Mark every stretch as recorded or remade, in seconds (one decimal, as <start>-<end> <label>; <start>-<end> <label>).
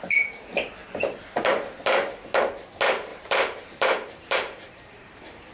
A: 0.0-3.1 recorded; 3.1-5.5 remade